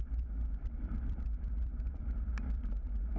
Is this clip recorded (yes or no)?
no